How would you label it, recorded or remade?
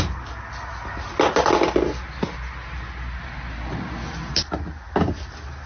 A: recorded